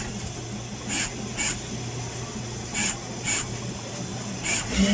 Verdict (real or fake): real